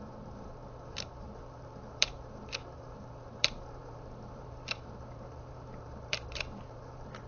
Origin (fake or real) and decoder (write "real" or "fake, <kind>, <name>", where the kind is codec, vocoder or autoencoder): fake, vocoder, BigVGAN v2